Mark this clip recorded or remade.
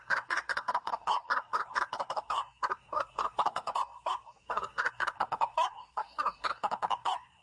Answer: remade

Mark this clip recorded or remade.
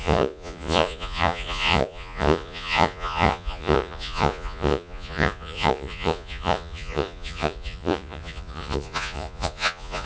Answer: remade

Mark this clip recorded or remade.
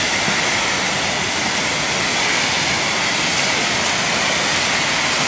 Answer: recorded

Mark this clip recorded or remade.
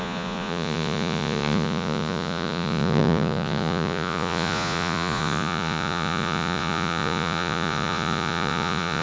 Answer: remade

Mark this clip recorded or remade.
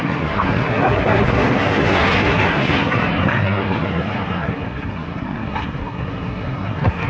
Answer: remade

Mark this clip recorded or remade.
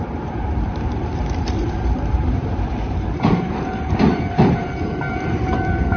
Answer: remade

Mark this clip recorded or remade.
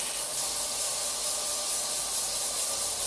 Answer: recorded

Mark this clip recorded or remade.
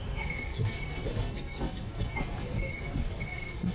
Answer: remade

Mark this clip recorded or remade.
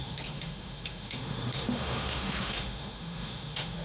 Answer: remade